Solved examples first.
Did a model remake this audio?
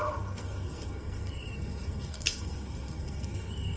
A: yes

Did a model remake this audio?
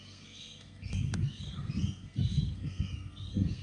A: yes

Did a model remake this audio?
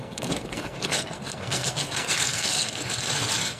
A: yes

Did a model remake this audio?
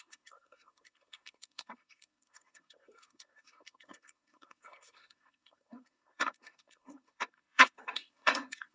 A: yes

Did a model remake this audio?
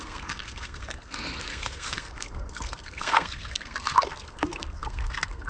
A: yes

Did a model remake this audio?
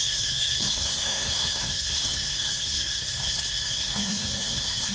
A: yes